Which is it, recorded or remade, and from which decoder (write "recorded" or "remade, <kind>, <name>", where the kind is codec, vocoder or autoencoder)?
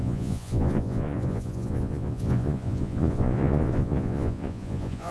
remade, vocoder, Vocos